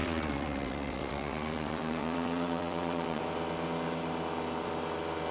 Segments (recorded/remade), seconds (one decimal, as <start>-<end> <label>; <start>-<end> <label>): 0.0-3.2 remade; 3.2-5.3 recorded